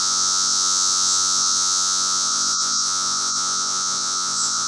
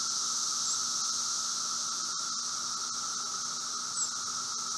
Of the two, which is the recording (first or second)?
second